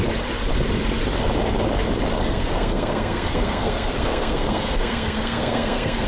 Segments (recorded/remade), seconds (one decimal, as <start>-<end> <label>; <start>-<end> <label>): 0.0-2.2 recorded; 2.2-6.1 remade